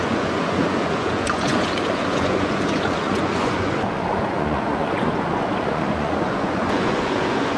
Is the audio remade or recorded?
remade